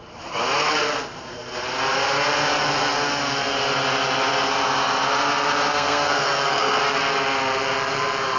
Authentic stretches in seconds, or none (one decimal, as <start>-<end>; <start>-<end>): 0.0-5.7; 6.8-8.4